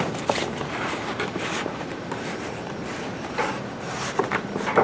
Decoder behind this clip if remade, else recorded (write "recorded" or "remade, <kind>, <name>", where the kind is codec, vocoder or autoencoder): remade, vocoder, BigVGAN v2